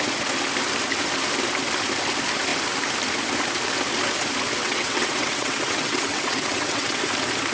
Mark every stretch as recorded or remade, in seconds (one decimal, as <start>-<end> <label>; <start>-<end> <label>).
0.0-4.6 recorded; 4.6-7.0 remade; 7.0-7.5 recorded